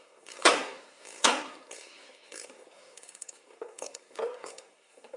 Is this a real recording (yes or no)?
no